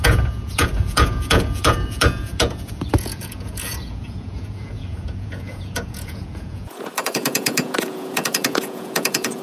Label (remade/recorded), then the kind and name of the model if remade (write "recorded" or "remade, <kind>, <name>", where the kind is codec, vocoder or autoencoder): remade, vocoder, Vocos